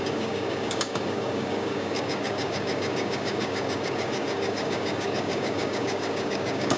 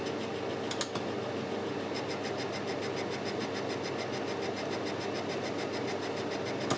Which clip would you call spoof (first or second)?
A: first